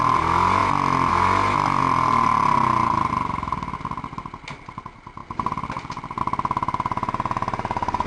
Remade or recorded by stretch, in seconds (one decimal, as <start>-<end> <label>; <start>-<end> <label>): 0.0-8.1 recorded